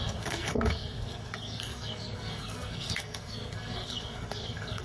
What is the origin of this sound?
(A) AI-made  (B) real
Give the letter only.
A